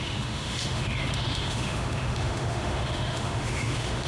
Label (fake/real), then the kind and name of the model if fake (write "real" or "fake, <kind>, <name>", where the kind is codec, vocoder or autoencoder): fake, autoencoder, DAC-VAE